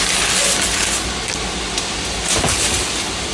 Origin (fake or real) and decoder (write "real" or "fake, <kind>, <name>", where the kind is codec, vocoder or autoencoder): real